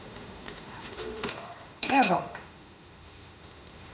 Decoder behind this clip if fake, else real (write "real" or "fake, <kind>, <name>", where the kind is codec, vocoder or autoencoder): fake, autoencoder, DAC-VAE